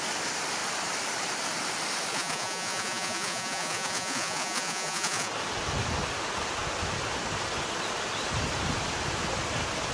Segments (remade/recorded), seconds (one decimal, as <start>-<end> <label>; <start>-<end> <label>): 0.0-2.1 recorded; 2.1-5.3 remade; 5.3-9.9 recorded